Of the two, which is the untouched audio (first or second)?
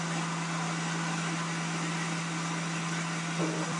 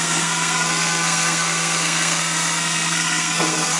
first